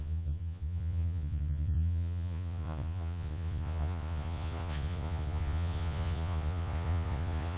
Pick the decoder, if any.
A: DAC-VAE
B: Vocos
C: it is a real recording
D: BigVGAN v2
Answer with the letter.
B